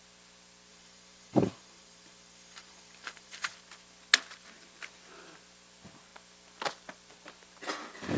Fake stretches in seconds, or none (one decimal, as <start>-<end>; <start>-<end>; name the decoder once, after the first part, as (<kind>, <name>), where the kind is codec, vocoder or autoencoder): 0.7-3.5 (vocoder, BigVGAN v2)